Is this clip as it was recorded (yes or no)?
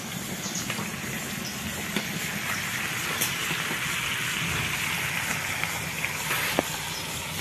yes